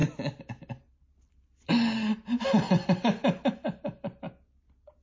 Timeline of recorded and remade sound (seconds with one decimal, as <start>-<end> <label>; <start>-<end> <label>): 0.0-5.0 recorded